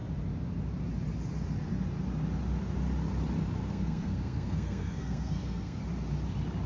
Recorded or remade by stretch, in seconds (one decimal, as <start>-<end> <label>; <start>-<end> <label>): 0.0-3.6 recorded; 3.6-5.8 remade; 5.8-6.7 recorded